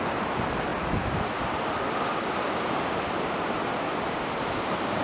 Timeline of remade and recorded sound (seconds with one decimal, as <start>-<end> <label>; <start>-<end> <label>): 0.0-0.7 remade; 0.7-2.5 recorded; 2.5-5.0 remade